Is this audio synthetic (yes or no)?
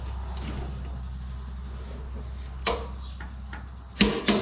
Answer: no